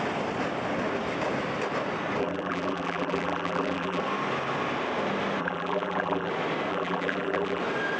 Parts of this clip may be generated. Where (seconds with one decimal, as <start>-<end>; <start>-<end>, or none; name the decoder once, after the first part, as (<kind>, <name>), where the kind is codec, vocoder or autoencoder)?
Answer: 2.2-4.0 (vocoder, BigVGAN v2); 5.4-6.3; 6.7-7.6